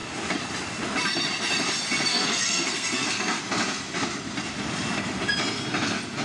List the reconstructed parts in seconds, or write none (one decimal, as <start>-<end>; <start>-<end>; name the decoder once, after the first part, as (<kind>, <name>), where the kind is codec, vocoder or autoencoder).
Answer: 2.1-3.4 (codec, SNAC)